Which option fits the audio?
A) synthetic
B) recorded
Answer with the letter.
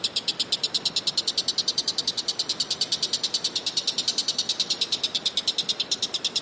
B